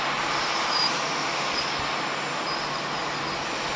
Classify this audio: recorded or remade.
recorded